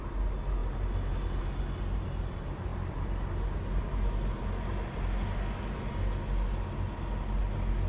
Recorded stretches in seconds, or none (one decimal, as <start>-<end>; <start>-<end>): 0.0-7.9